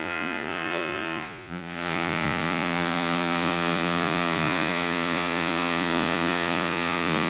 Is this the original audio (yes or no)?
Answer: no